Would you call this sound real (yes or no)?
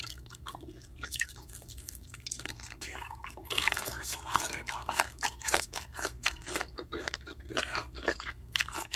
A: no